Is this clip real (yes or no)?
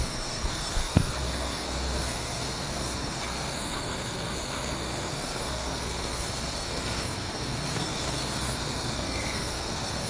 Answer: no